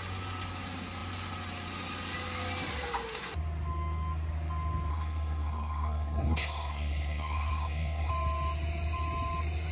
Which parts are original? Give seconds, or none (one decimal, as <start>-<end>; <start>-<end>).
0.0-4.9; 8.1-9.7